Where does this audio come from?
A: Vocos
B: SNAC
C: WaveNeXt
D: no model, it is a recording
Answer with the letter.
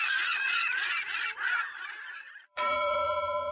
A